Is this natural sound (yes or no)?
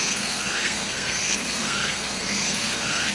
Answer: no